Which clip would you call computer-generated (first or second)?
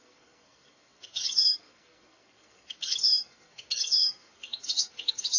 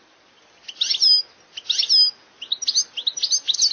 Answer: first